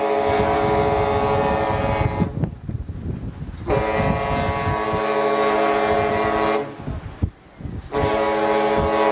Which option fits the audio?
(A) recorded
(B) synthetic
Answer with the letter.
A